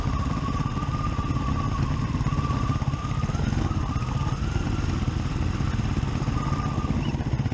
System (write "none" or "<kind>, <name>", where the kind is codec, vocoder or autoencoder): none